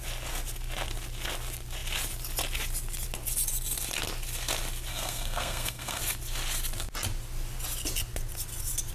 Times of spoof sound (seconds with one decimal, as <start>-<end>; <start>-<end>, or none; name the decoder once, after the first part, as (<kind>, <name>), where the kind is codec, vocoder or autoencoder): 4.9-6.0 (codec, SNAC)